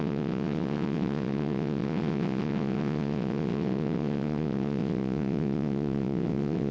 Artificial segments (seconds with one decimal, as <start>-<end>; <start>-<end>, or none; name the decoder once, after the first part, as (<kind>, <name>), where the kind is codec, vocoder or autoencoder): 0.0-6.7 (vocoder, WaveNeXt)